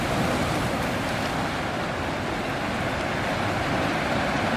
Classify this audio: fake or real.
real